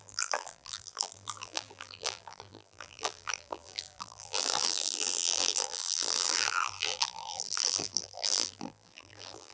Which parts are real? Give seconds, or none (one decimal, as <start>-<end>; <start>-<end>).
none